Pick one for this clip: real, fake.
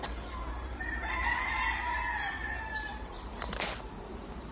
fake